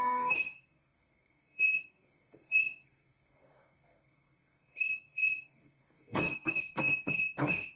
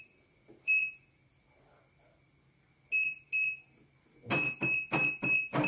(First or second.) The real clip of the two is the second